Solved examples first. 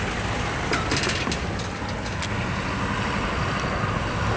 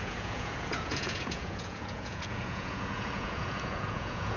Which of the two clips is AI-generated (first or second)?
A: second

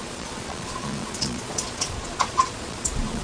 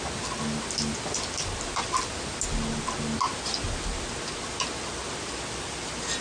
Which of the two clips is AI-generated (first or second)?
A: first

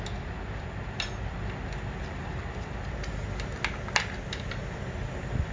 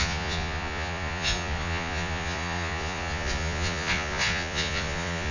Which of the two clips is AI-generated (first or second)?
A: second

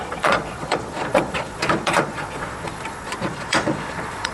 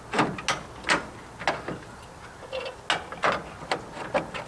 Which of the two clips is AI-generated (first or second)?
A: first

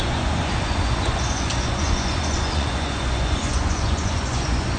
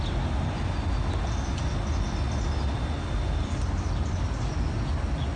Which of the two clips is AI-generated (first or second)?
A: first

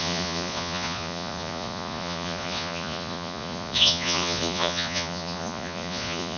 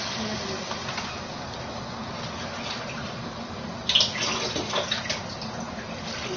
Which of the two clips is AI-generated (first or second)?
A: first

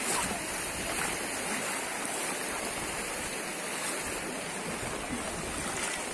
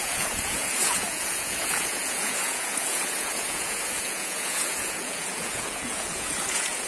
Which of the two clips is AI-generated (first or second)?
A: second